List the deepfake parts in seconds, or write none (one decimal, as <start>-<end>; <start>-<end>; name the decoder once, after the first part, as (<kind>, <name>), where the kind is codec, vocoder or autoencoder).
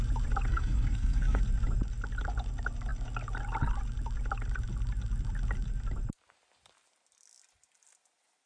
0.5-1.4 (codec, SNAC)